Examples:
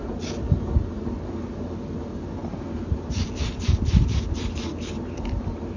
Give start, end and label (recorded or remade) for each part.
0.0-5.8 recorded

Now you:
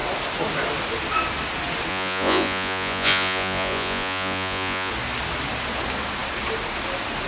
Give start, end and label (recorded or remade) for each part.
0.0-1.9 recorded; 1.9-4.9 remade; 4.9-7.3 recorded

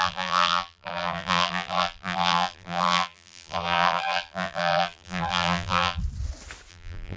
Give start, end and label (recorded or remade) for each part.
0.0-6.0 remade; 6.0-6.7 recorded; 6.7-7.2 remade